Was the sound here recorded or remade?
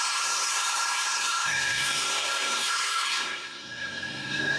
remade